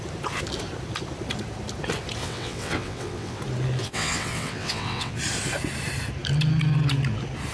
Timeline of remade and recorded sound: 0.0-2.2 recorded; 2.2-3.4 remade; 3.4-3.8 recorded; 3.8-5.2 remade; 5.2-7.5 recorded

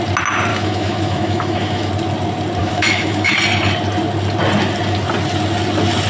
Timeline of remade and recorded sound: 0.0-0.5 recorded; 0.5-1.9 remade; 1.9-2.6 recorded; 2.6-3.3 remade; 3.3-6.1 recorded

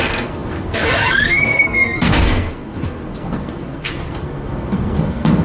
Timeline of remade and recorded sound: 0.0-5.4 remade

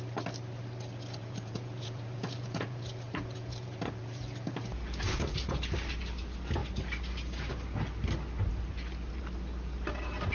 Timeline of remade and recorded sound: 0.0-1.2 recorded; 1.2-5.6 remade; 5.6-10.3 recorded

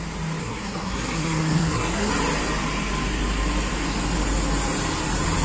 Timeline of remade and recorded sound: 0.0-0.4 recorded; 0.4-2.1 remade; 2.1-5.4 recorded

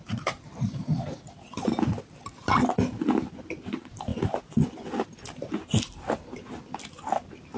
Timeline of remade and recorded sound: 0.0-7.6 recorded

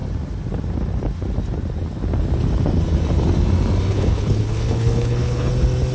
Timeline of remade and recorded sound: 0.0-3.9 recorded; 3.9-5.5 remade; 5.5-5.9 recorded